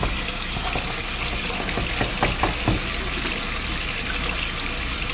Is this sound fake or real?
real